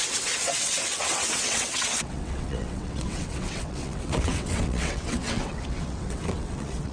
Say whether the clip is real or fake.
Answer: fake